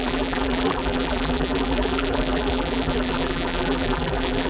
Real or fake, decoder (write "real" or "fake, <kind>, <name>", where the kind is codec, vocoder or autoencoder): fake, vocoder, BigVGAN v2